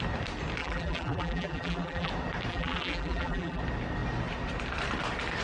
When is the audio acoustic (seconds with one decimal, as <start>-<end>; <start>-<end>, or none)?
0.0-0.6; 2.1-2.5; 3.6-5.4